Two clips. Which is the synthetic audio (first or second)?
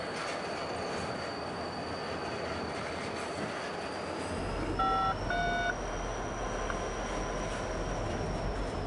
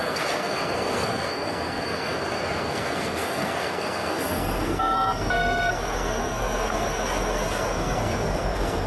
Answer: second